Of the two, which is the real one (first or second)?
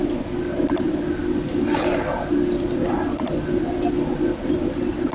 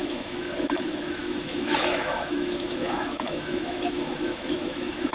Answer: first